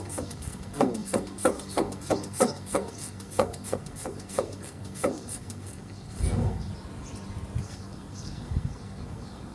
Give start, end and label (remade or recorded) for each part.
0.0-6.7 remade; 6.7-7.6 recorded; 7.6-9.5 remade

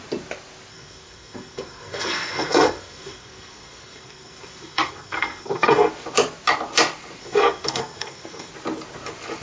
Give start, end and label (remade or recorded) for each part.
0.0-0.7 recorded; 0.7-5.9 remade; 5.9-7.2 recorded; 7.2-8.5 remade; 8.5-9.4 recorded

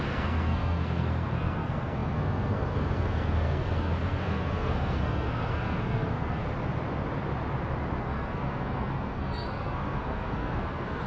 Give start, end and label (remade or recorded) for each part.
0.0-6.4 remade; 6.4-8.0 recorded; 8.0-11.1 remade

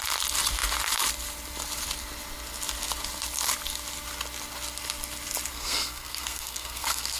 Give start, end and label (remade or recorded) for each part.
0.0-5.5 recorded; 5.5-7.2 remade

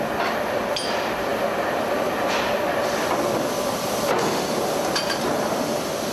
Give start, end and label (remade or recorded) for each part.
0.0-6.1 recorded

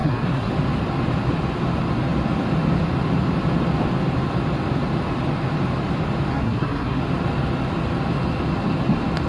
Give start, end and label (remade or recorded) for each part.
0.0-0.5 remade; 0.5-6.3 recorded; 6.3-7.0 remade; 7.0-9.3 recorded

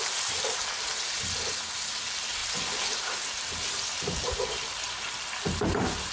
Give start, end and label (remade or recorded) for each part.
0.0-6.1 recorded

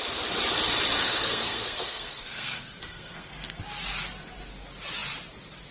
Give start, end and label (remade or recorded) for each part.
0.0-1.0 recorded; 1.0-3.6 remade; 3.6-5.7 recorded